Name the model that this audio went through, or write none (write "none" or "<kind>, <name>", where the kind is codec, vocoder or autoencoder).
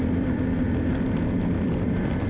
vocoder, BigVGAN v2